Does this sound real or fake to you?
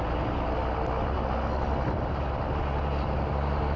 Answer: real